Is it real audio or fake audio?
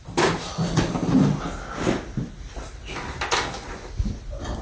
real